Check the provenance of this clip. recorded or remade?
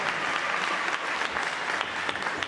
recorded